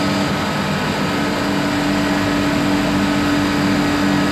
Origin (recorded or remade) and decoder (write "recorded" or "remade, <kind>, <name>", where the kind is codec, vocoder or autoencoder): recorded